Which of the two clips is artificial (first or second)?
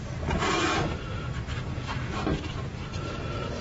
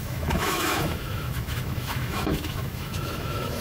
second